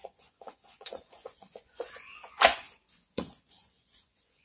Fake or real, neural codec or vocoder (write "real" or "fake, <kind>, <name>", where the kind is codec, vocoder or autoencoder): fake, vocoder, Vocos